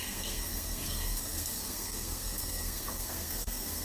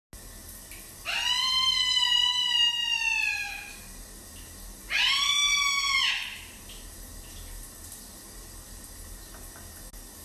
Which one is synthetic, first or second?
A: first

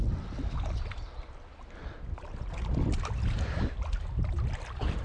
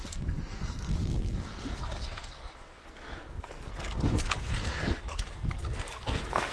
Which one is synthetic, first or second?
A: second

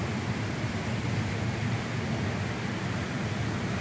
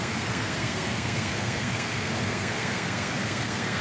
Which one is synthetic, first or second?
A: second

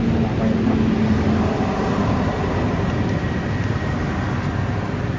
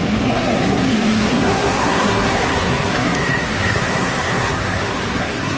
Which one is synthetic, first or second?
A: second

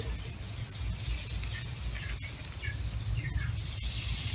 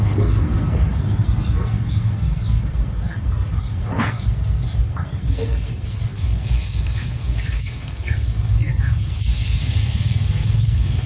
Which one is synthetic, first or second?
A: second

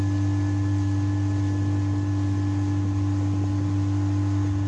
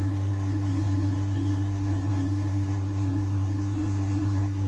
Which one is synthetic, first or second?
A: second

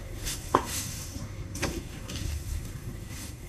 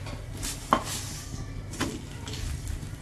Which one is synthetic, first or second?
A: first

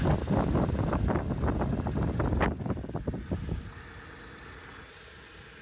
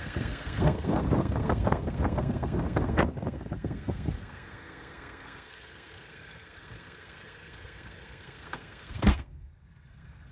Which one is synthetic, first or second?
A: second